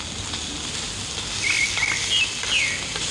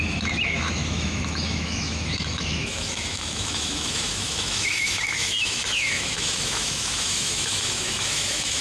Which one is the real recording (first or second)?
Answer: first